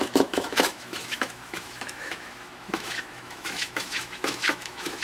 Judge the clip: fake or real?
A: fake